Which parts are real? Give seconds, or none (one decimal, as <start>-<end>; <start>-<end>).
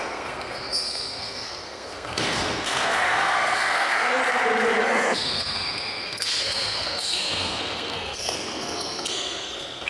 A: 4.2-4.8